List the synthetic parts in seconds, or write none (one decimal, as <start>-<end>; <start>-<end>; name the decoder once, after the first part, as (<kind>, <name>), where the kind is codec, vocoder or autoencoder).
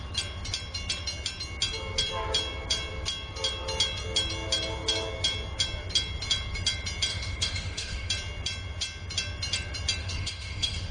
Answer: 7.1-8.1 (autoencoder, DAC-VAE); 10.0-10.9